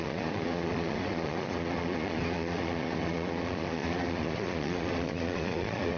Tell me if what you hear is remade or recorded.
remade